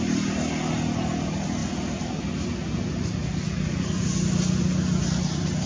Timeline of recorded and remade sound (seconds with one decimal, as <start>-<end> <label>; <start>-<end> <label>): 0.0-5.7 recorded